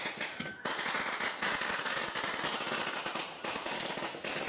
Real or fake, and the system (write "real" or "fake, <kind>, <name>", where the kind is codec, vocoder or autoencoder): real